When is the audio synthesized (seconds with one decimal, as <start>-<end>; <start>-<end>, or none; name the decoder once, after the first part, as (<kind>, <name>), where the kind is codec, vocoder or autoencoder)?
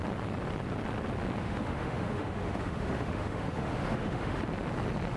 1.4-4.4 (autoencoder, DAC-VAE)